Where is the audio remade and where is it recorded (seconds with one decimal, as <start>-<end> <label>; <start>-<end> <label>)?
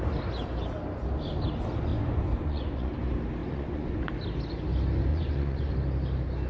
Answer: 0.0-1.9 recorded; 1.9-2.9 remade; 2.9-3.4 recorded; 3.4-4.1 remade; 4.1-5.1 recorded; 5.1-5.7 remade; 5.7-6.5 recorded